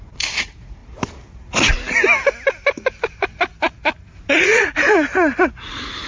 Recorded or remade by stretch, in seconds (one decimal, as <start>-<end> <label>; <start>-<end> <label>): 0.0-0.8 remade; 0.8-4.3 recorded; 4.3-6.1 remade